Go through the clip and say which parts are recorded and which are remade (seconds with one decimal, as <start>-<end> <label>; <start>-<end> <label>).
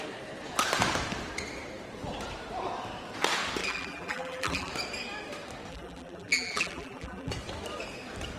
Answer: 0.0-3.6 recorded; 3.6-4.7 remade; 4.7-5.7 recorded; 5.7-7.3 remade; 7.3-8.4 recorded